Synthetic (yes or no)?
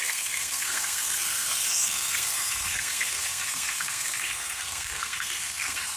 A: yes